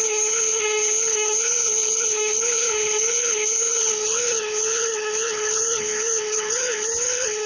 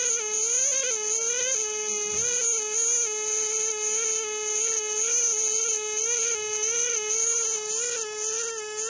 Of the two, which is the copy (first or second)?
first